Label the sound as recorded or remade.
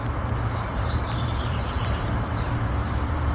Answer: remade